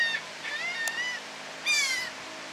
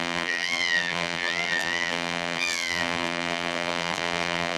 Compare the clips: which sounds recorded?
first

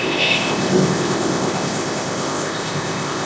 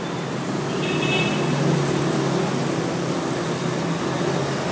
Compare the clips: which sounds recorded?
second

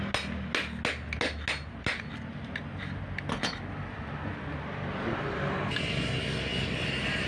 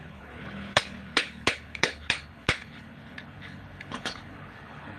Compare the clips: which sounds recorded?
first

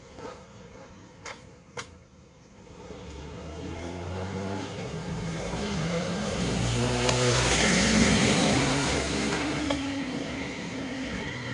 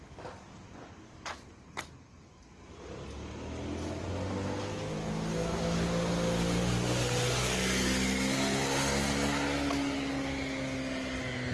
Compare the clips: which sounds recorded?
second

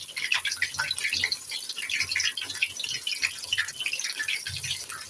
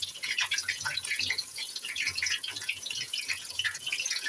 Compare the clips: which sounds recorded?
first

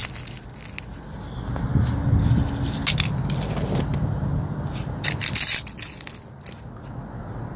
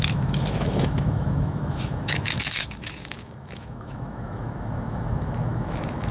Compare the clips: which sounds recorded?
first